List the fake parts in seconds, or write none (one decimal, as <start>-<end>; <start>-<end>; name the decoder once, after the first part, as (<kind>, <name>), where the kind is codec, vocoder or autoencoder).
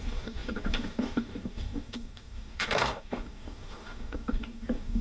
0.0-5.0 (codec, DAC)